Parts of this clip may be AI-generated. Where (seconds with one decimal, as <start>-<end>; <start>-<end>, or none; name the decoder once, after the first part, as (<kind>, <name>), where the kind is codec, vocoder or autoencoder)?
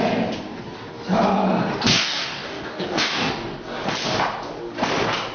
1.9-3.3 (codec, DAC)